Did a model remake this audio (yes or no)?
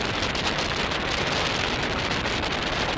no